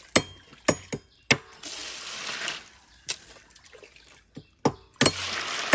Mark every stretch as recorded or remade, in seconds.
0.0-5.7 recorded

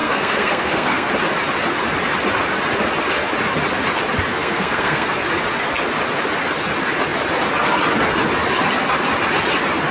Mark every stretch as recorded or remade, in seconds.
0.0-1.1 remade; 1.1-4.3 recorded; 4.3-5.1 remade; 5.1-9.9 recorded

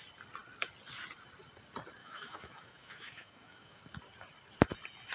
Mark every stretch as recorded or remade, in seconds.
0.0-2.0 recorded; 2.0-3.8 remade; 3.8-5.1 recorded

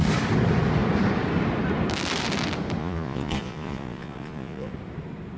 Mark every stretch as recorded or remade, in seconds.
0.0-2.8 recorded; 2.8-4.7 remade; 4.7-5.4 recorded

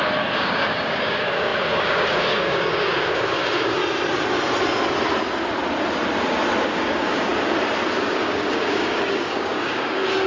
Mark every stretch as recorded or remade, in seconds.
0.0-3.8 remade; 3.8-6.7 recorded; 6.7-7.3 remade; 7.3-8.1 recorded; 8.1-10.3 remade